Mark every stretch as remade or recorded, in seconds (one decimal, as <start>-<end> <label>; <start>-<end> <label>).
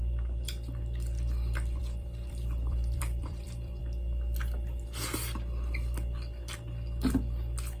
0.0-1.8 recorded; 1.8-3.8 remade; 3.8-7.8 recorded